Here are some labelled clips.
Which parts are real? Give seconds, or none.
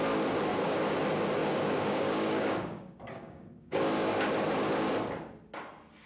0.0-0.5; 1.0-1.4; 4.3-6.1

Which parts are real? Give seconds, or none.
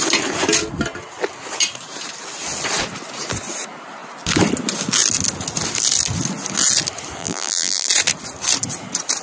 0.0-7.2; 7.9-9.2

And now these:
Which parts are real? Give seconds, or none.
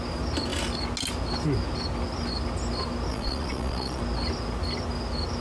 0.0-3.1; 4.0-5.4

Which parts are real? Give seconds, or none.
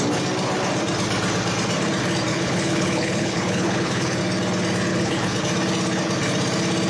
0.0-2.3; 4.2-4.9; 5.4-6.9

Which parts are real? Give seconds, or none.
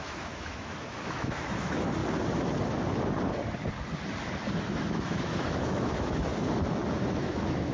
2.0-4.6; 6.3-7.2